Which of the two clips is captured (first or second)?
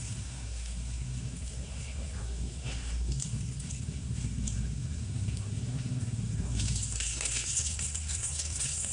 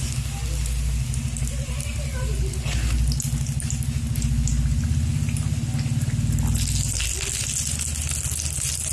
second